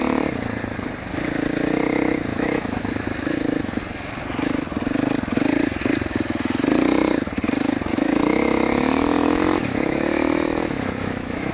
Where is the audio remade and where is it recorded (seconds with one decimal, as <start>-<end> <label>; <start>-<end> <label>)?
0.0-2.3 recorded; 2.3-3.1 remade; 3.1-7.9 recorded; 7.9-11.5 remade